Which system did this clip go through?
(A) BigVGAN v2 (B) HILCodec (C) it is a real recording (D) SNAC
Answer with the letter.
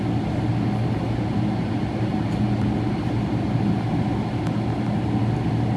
C